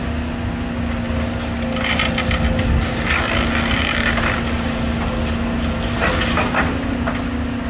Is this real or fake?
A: real